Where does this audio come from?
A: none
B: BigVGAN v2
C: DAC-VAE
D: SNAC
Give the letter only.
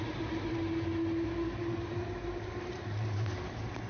B